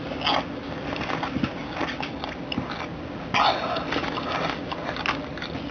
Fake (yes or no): no